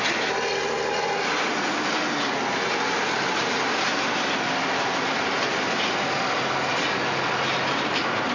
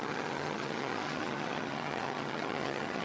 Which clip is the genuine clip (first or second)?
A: first